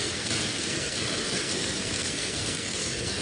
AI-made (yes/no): yes